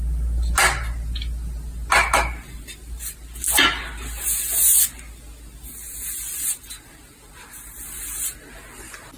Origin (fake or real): real